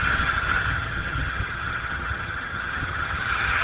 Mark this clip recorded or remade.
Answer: remade